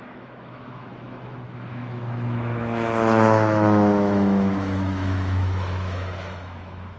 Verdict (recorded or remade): remade